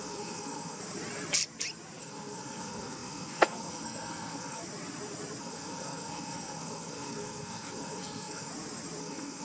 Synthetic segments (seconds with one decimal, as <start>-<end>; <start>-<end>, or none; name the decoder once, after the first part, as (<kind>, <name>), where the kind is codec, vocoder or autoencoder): 0.0-0.8 (codec, SNAC); 2.0-4.6; 5.4-8.5; 9.0-9.4